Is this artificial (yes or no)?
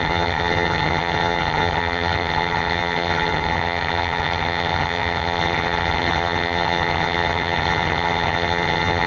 yes